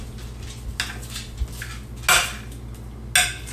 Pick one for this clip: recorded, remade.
recorded